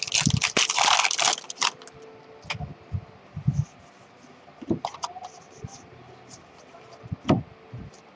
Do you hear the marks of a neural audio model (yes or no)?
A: no